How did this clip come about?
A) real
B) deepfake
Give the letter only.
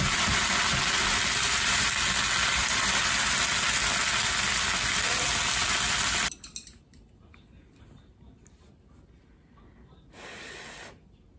A